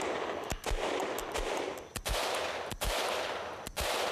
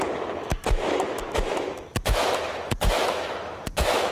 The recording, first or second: first